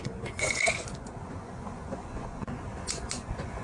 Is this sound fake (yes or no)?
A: yes